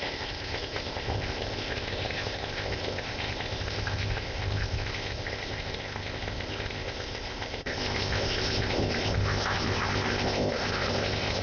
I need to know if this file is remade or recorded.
remade